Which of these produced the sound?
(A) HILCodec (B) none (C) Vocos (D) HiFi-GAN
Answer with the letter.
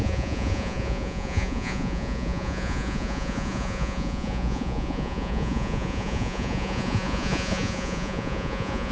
C